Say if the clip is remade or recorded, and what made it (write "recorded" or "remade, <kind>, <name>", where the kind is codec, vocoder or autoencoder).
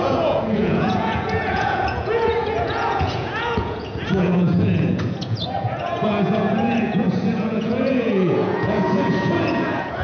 remade, vocoder, Vocos